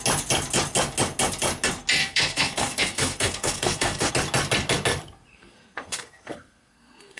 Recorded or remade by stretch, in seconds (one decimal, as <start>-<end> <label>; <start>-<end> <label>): 0.0-2.0 recorded; 2.0-4.1 remade; 4.1-5.3 recorded; 5.3-7.2 remade